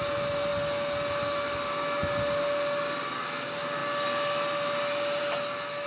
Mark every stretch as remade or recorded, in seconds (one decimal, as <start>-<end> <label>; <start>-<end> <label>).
0.0-5.9 recorded